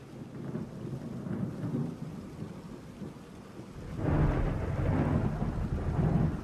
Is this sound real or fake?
real